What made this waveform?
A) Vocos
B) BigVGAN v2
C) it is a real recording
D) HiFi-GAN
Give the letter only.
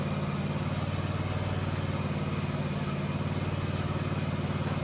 C